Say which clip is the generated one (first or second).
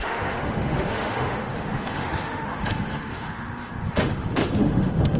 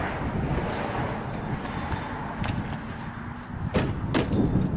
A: first